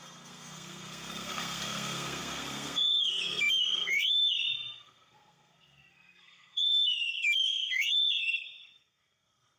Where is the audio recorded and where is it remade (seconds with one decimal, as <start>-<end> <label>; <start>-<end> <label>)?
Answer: 0.0-9.6 remade